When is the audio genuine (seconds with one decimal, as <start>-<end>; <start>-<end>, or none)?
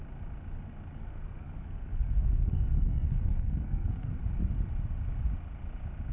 0.0-1.0; 4.2-6.1